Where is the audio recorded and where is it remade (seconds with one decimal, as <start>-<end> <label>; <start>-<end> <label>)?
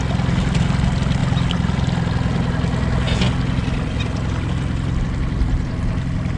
0.0-6.4 recorded